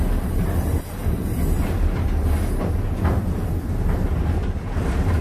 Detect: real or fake real